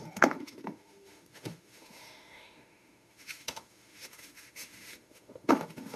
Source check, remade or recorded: remade